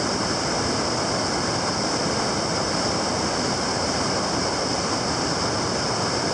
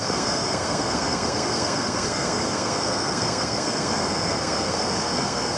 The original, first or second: first